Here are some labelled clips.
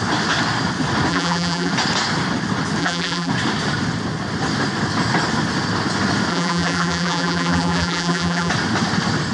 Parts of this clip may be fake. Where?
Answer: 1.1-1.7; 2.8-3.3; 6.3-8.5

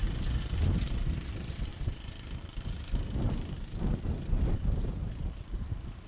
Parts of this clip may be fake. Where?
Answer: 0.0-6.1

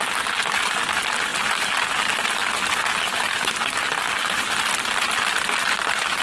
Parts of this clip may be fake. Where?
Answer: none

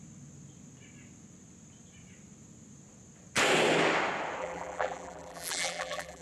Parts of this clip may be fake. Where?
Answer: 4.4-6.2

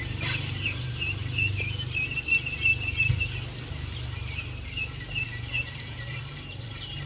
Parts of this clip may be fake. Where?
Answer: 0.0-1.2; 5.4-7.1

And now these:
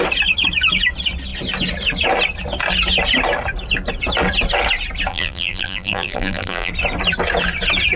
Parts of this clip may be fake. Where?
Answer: 5.1-6.7